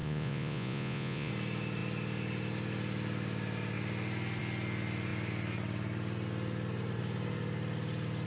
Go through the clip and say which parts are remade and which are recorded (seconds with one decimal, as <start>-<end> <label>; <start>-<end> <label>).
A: 0.0-1.3 remade; 1.3-8.3 recorded